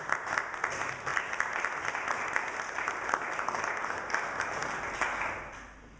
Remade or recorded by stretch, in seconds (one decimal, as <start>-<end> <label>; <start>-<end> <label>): 0.0-6.0 recorded